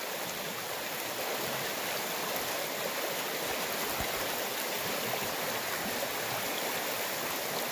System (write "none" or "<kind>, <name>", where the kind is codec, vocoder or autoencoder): none